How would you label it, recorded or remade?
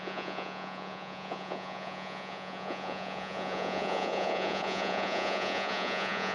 remade